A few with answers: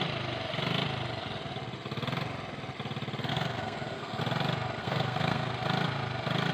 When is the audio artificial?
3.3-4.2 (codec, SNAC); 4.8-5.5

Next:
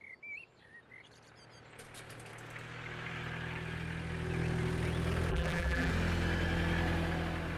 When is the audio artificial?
5.3-5.9 (vocoder, BigVGAN v2)

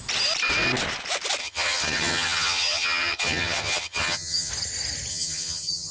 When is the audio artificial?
1.4-4.5 (vocoder, HiFi-GAN); 5.1-5.9

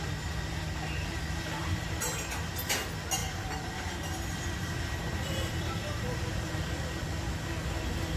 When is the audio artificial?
1.6-2.5 (vocoder, BigVGAN v2); 3.2-6.5

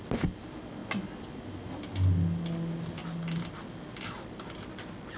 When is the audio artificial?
none